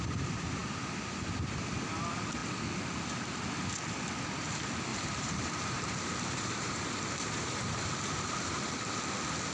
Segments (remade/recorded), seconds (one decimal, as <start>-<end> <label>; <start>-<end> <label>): 0.0-4.9 recorded; 4.9-8.5 remade; 8.5-9.5 recorded

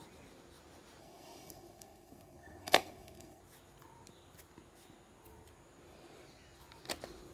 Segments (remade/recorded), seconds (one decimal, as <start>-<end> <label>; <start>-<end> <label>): 0.0-1.0 recorded; 1.0-3.4 remade; 3.4-7.3 recorded

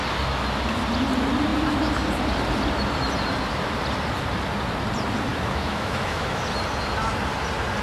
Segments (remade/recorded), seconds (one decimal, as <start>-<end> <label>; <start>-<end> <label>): 0.0-5.3 recorded; 5.3-6.4 remade; 6.4-7.8 recorded

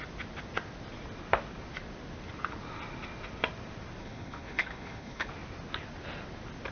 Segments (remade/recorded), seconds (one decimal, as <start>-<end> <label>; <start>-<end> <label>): 0.0-4.0 recorded; 4.0-5.3 remade; 5.3-6.7 recorded

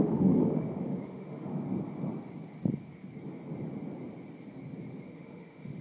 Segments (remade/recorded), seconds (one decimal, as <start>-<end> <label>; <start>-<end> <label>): 0.0-1.5 remade; 1.5-5.0 recorded; 5.0-5.8 remade

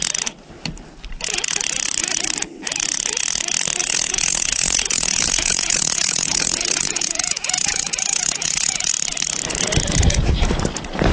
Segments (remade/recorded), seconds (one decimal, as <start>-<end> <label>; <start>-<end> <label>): 0.0-3.8 recorded; 3.8-8.9 remade; 8.9-11.1 recorded

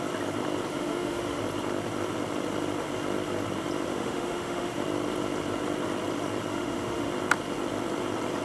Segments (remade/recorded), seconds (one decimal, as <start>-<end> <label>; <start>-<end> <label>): 0.0-0.7 recorded; 0.7-1.4 remade; 1.4-3.9 recorded; 3.9-4.8 remade; 4.8-6.5 recorded; 6.5-7.1 remade; 7.1-8.4 recorded

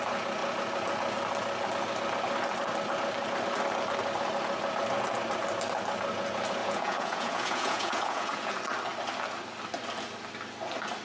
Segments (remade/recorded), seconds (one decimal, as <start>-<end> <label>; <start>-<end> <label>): 0.0-6.6 recorded; 6.6-8.5 remade; 8.5-11.0 recorded